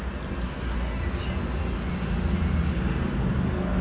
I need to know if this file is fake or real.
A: real